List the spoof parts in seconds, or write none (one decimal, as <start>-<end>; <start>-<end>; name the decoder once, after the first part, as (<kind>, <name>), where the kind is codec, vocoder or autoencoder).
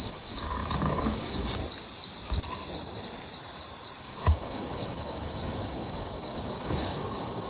0.0-1.6 (codec, DAC); 4.0-7.5